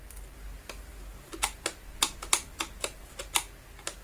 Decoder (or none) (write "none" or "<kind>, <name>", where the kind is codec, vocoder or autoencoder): none